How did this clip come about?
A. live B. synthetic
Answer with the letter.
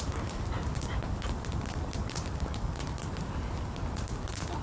A